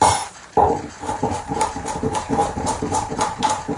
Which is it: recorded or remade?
remade